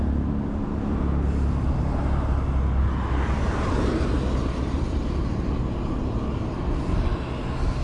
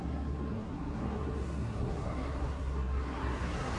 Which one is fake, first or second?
second